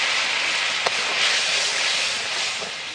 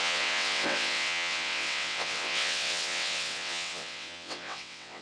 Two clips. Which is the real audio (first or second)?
first